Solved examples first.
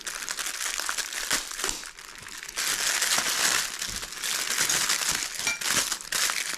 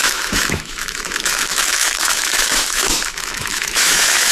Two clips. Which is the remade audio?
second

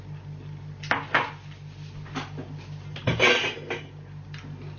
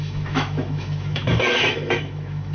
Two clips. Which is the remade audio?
second